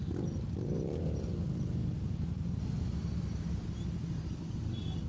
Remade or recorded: recorded